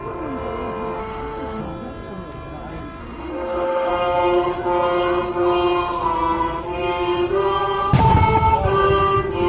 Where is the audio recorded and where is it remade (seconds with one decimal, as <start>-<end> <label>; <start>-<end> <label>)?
0.0-1.0 recorded; 1.0-1.6 remade; 1.6-3.0 recorded; 3.0-3.9 remade; 3.9-9.5 recorded